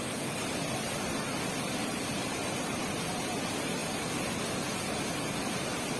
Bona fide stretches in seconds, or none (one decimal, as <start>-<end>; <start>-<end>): 0.0-6.0